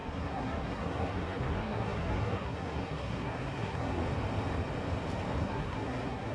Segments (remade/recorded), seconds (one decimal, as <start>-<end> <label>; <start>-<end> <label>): 0.0-4.0 remade; 4.0-5.4 recorded; 5.4-6.3 remade